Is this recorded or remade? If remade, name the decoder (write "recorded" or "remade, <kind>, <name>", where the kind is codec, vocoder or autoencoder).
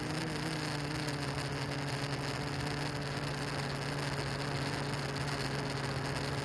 recorded